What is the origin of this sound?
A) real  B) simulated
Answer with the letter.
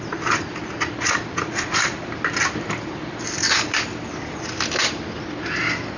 B